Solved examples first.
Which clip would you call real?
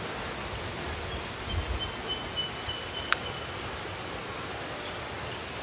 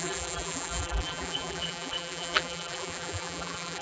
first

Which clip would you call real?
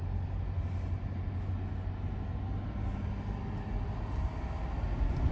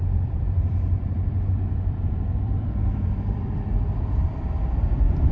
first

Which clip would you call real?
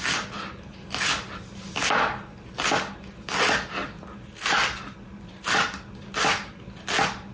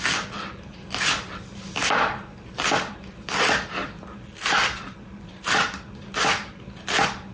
first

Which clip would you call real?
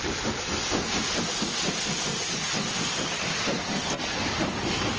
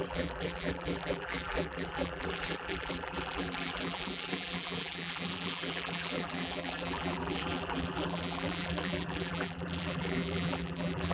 first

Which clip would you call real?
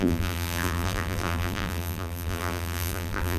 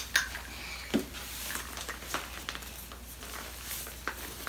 second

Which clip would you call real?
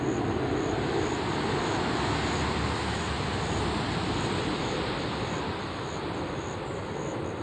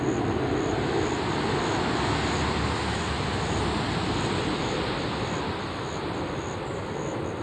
second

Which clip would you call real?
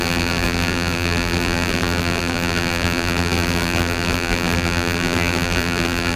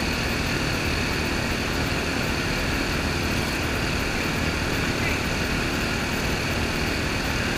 second